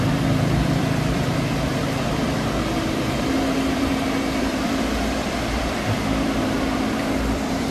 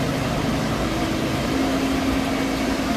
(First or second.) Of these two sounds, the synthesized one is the first